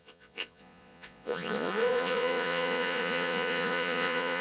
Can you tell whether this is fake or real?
fake